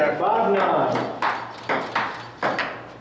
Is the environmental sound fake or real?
real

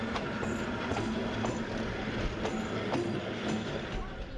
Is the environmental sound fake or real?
real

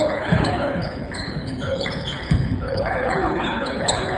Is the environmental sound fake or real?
fake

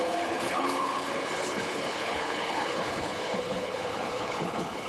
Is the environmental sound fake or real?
fake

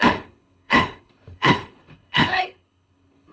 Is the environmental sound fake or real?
fake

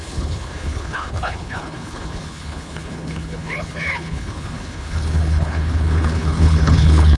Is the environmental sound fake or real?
fake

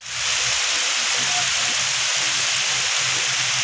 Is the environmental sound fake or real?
real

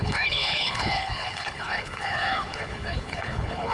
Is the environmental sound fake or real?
fake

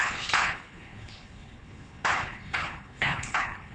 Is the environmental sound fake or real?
fake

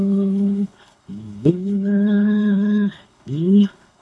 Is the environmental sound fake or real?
fake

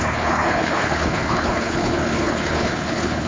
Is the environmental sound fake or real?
fake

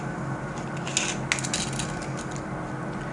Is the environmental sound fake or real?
real